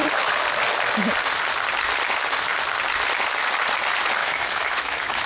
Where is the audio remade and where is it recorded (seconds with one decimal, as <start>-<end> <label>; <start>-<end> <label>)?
0.0-4.2 recorded; 4.2-5.3 remade